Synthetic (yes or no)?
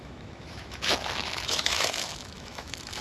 yes